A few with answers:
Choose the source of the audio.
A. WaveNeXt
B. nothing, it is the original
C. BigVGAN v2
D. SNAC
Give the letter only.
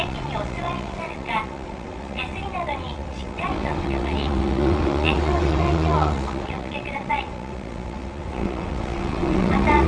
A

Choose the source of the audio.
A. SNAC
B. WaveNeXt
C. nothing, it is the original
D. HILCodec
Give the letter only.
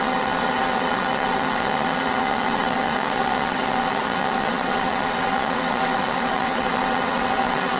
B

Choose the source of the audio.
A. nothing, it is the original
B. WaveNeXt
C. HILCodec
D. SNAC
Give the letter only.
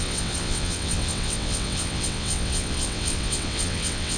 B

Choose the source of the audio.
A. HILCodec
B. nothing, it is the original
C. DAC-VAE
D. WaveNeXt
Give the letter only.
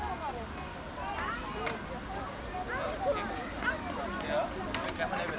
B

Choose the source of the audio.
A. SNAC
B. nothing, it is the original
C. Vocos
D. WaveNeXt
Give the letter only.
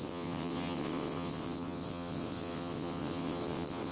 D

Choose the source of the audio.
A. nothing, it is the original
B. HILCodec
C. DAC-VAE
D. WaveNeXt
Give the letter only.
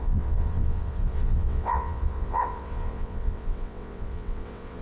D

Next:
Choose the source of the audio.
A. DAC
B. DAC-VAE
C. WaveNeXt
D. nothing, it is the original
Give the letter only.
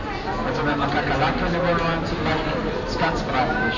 D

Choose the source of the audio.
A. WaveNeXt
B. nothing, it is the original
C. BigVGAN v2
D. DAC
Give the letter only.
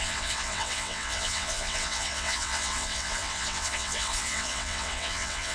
A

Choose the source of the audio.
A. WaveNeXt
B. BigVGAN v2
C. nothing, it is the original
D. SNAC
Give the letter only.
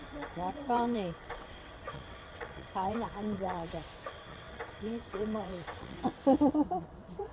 A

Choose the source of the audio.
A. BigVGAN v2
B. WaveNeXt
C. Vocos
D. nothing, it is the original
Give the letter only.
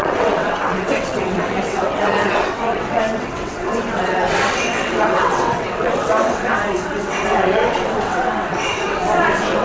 B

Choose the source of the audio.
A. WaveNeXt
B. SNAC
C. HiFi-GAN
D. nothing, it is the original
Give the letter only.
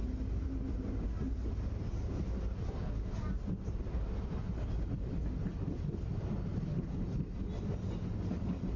D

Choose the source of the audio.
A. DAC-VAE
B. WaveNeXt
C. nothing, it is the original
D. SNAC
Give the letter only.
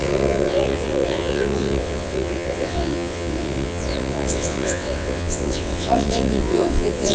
B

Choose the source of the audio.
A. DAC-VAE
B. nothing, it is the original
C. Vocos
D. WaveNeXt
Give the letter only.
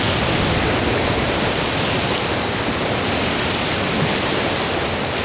B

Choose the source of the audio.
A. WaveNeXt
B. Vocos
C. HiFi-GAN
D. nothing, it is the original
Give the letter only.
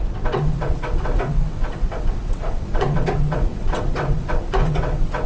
A